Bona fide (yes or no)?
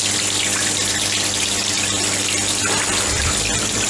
yes